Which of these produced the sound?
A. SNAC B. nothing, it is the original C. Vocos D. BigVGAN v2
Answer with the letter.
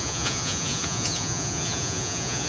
C